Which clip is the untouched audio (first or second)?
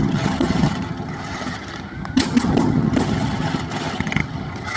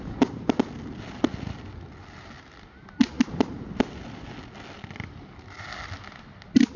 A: second